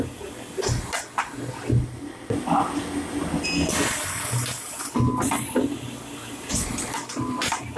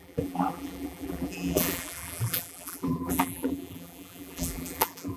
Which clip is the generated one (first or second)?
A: second